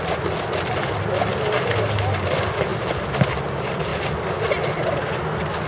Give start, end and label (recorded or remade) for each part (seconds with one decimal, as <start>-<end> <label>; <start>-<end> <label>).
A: 0.0-5.7 recorded